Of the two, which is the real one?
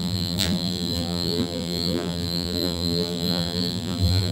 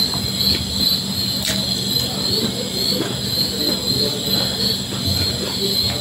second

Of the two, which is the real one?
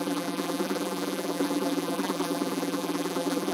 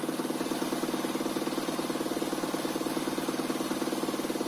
second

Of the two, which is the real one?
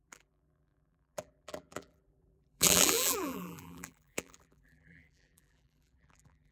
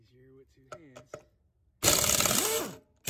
second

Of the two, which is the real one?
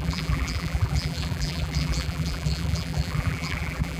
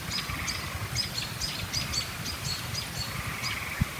second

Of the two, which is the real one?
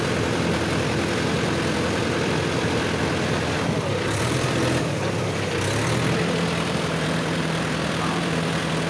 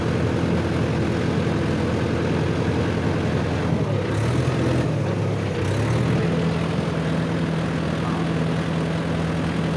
second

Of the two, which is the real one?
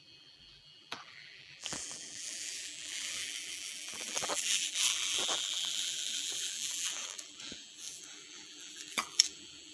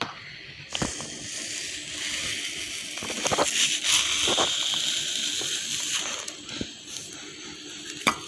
second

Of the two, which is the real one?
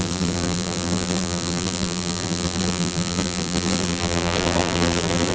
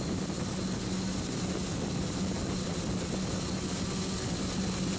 second